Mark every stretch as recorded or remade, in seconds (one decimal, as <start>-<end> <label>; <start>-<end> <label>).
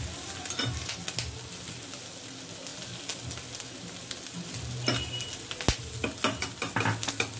0.0-7.4 recorded